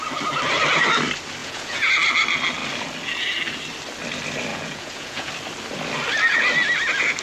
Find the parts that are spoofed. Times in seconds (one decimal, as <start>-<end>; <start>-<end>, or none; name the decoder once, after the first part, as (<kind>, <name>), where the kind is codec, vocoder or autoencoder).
1.4-1.9 (vocoder, Vocos); 4.5-5.3